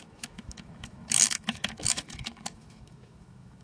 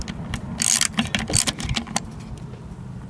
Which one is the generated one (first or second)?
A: first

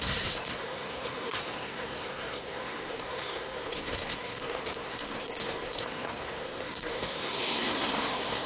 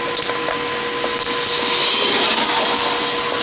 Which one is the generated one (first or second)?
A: first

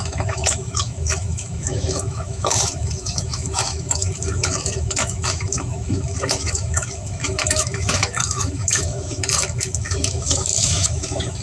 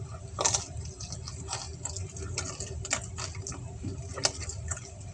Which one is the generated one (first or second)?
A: first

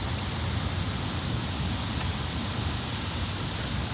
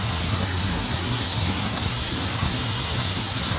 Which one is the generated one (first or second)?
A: second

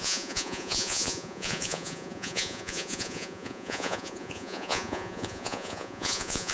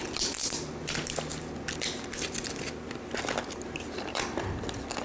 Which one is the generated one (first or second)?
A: first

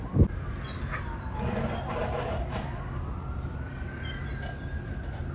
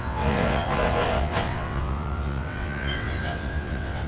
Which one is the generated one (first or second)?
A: second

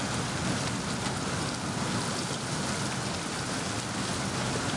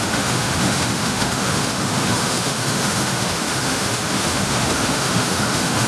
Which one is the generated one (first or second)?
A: second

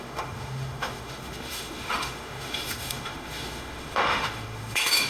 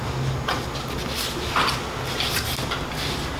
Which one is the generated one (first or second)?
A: first